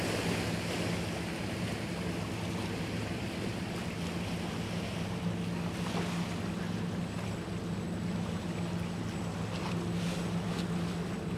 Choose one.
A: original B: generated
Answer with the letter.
A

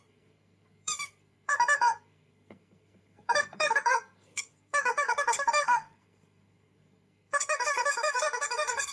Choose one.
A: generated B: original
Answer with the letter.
A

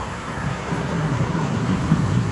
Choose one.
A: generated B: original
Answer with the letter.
A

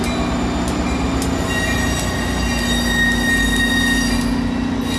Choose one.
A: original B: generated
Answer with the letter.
A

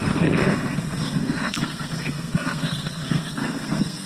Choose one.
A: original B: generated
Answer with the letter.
B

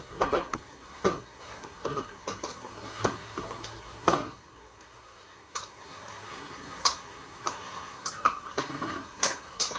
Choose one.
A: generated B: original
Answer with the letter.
A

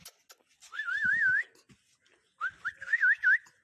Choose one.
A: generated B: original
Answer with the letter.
B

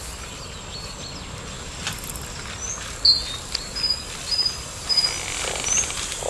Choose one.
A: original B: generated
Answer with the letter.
A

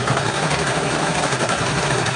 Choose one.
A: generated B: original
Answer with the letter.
A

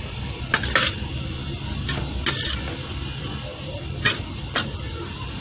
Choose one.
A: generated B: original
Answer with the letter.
B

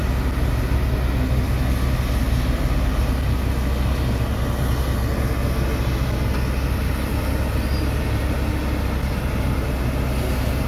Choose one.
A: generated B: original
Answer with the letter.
B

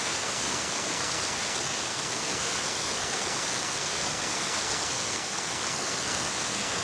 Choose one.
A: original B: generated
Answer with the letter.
B